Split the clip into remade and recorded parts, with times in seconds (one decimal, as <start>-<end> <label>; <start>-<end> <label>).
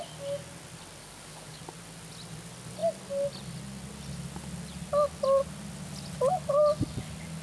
0.0-1.0 recorded; 1.0-1.6 remade; 1.6-7.4 recorded